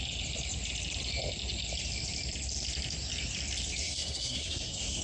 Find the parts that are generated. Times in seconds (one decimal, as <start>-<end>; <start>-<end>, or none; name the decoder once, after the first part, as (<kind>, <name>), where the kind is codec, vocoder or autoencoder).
3.8-5.0 (codec, SNAC)